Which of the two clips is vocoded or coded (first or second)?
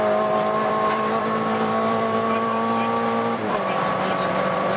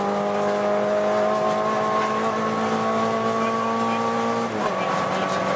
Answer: first